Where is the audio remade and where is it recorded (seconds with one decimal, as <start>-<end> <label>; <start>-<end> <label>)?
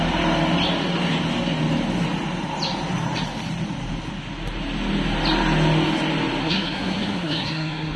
0.0-6.4 recorded; 6.4-8.0 remade